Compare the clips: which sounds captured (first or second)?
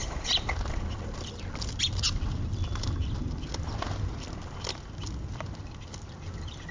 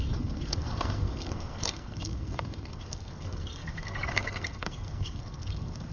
first